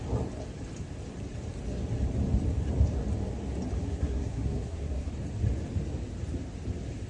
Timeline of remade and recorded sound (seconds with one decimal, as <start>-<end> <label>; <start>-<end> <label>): 0.0-3.8 recorded; 3.8-5.1 remade; 5.1-7.1 recorded